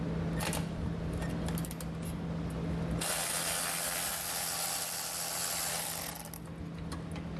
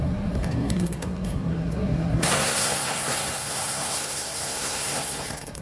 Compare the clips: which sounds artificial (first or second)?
second